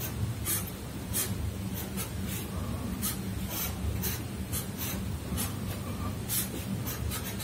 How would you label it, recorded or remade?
recorded